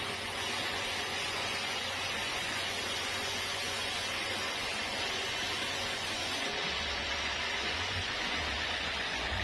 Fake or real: fake